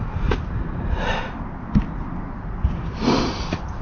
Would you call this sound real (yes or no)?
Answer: yes